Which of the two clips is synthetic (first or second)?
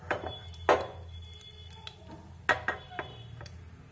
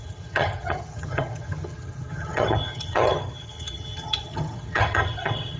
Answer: second